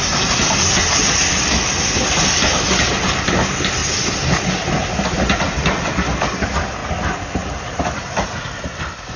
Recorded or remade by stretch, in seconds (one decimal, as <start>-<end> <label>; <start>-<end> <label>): 0.0-9.2 recorded